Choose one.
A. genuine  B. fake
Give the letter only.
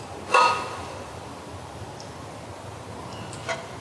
A